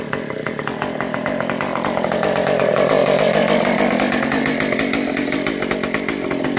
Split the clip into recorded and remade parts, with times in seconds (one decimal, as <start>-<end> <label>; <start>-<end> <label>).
0.0-6.6 recorded